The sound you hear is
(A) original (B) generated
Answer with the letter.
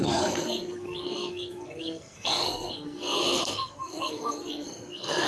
B